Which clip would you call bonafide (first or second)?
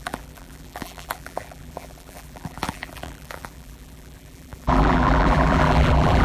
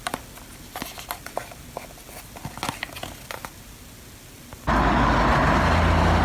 second